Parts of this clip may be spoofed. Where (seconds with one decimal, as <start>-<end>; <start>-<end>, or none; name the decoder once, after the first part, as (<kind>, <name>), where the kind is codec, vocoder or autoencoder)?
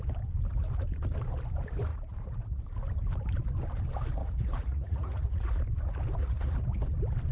1.9-2.6 (vocoder, Vocos); 4.2-5.5; 6.2-6.8